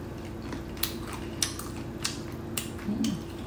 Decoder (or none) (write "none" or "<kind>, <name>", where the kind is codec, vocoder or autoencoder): none